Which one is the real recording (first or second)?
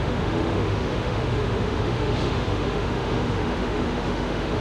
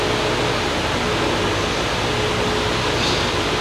second